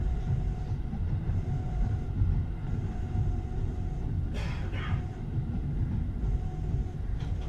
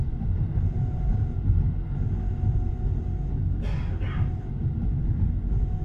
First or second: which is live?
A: second